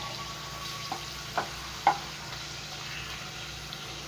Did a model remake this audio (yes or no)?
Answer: no